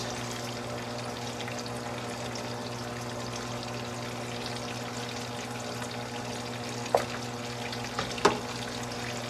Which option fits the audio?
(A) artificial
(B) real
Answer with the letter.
B